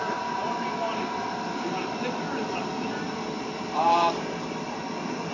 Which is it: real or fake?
fake